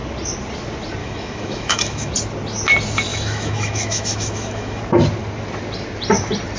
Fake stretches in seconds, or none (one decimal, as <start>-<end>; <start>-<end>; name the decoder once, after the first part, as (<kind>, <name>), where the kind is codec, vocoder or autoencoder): 1.0-2.1 (autoencoder, DAC-VAE); 3.1-4.8